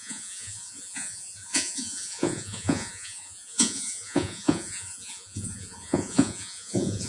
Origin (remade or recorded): remade